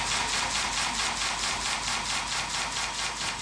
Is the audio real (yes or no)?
yes